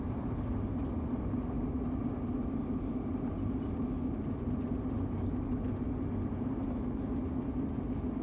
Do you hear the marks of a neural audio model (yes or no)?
no